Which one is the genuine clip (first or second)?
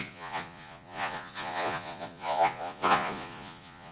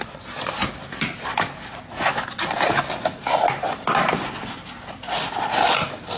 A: second